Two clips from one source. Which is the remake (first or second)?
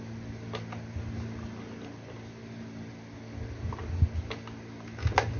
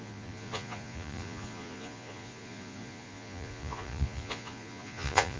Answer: second